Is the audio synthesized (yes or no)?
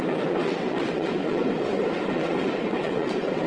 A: yes